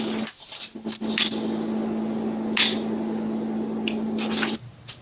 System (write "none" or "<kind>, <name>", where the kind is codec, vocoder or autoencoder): none